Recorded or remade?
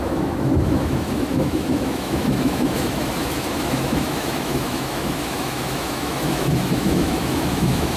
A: remade